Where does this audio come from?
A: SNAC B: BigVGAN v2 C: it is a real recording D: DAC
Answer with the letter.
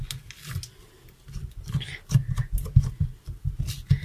C